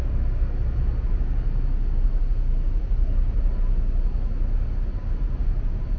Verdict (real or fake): real